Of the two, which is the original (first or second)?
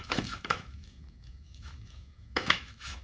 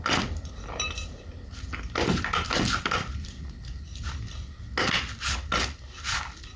second